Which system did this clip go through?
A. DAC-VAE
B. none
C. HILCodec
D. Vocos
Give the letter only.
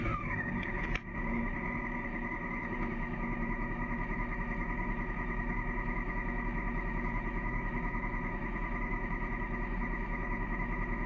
A